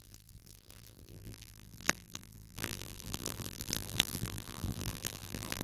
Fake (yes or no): yes